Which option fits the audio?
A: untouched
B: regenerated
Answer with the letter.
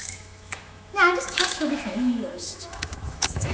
B